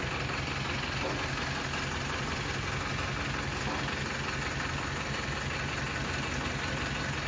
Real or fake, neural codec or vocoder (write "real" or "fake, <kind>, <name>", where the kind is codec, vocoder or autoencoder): real